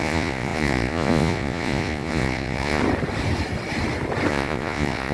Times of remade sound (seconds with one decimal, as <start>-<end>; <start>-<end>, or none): 0.0-2.8; 4.3-5.1